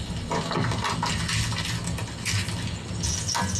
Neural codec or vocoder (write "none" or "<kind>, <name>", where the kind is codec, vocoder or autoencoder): none